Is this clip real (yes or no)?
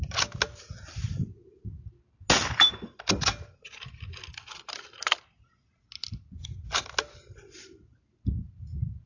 yes